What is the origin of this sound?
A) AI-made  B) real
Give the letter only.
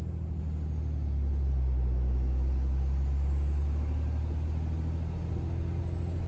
B